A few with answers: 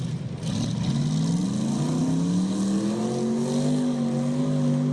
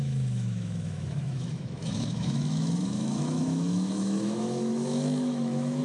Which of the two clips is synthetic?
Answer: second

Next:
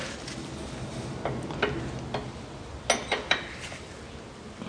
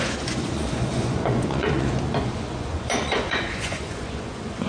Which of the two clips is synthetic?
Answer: second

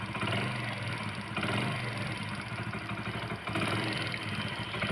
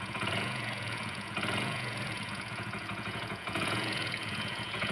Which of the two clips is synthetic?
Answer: second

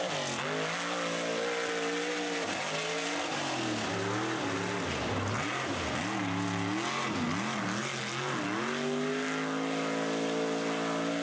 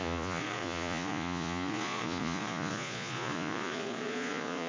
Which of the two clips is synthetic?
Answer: second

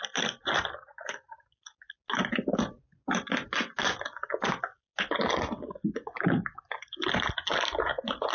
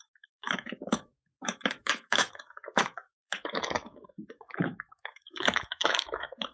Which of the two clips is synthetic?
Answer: second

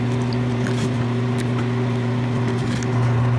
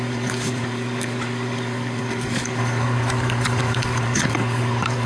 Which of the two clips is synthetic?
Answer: second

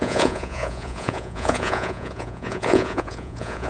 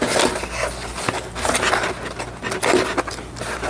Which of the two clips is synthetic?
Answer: first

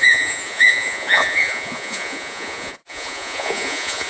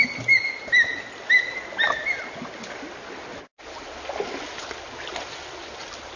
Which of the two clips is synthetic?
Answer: first